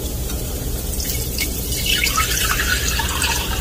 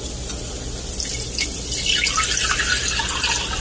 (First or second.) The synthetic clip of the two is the first